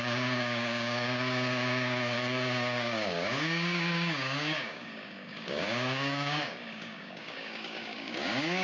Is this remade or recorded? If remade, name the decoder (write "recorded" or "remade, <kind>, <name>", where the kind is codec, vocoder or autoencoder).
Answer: remade, codec, DAC